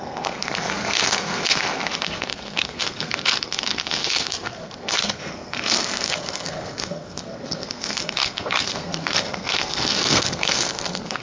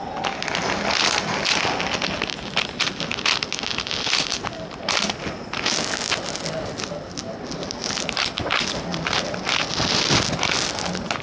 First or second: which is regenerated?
first